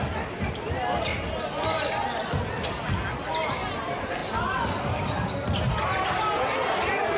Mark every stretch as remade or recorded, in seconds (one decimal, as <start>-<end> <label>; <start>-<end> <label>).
0.0-7.2 recorded